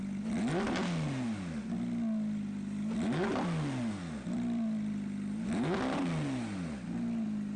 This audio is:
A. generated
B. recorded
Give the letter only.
B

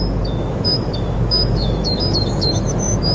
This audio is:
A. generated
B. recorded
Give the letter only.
A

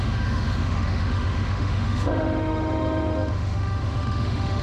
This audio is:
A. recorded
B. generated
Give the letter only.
B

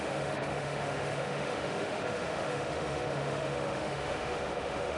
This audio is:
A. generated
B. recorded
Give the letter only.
A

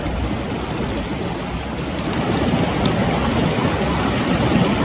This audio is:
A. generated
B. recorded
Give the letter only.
B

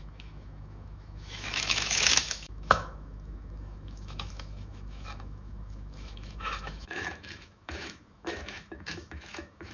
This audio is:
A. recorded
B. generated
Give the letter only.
B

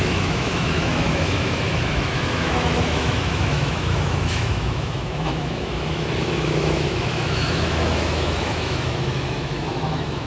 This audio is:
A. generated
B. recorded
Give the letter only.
A